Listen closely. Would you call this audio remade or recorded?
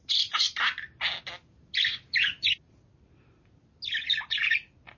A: recorded